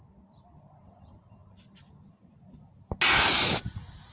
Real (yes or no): yes